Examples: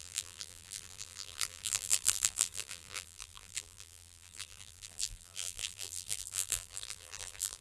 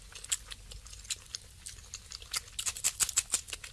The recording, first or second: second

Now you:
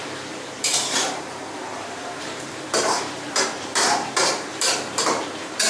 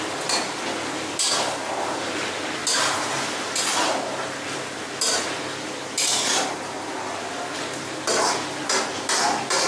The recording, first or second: second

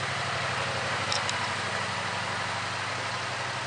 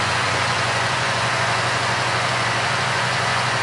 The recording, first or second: first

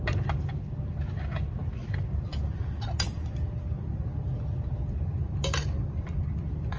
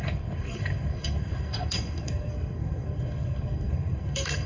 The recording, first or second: first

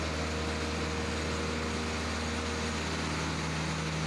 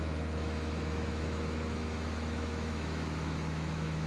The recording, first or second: first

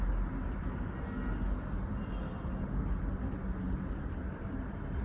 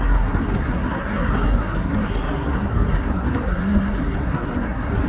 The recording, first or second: first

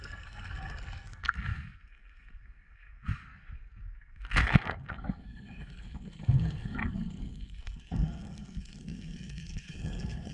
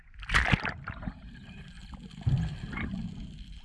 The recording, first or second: second